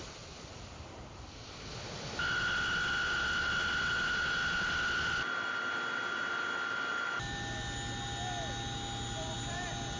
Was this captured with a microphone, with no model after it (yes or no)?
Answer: yes